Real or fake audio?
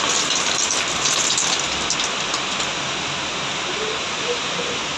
real